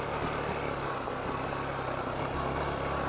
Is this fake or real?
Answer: real